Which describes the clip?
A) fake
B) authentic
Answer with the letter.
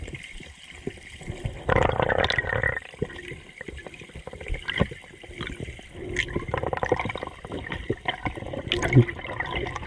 B